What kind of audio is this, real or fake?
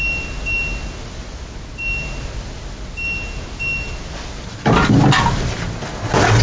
real